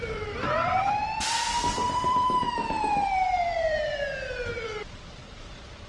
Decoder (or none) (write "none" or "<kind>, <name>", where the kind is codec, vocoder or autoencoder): vocoder, BigVGAN v2